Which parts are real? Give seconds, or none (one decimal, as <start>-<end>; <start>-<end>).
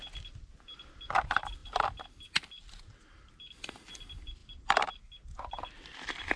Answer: 0.0-6.4